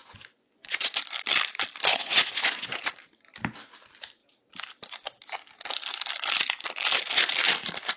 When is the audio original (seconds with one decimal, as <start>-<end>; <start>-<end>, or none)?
1.0-1.9; 2.8-8.0